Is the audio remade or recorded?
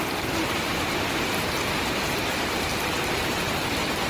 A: recorded